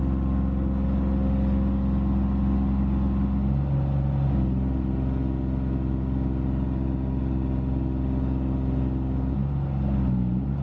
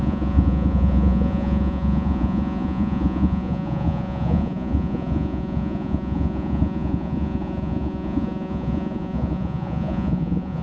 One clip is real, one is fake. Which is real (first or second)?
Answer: first